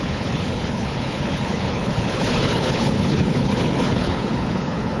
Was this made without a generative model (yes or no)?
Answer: no